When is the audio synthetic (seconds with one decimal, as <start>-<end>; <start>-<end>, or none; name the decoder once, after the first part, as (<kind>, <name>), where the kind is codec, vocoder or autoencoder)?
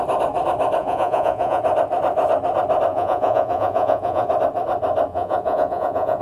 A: 0.8-1.6 (vocoder, Vocos); 2.9-4.3; 5.1-6.2